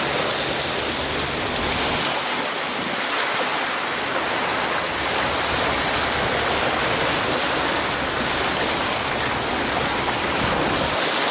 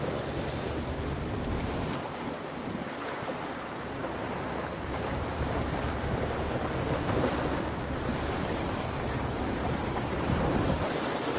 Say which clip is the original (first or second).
first